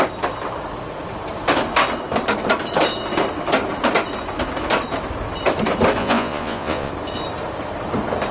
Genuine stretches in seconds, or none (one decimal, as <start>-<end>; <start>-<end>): 0.0-6.0; 6.9-8.3